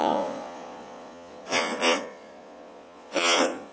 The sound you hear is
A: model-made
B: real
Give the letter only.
A